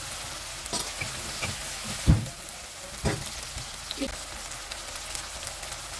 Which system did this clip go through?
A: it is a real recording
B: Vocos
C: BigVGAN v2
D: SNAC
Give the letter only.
A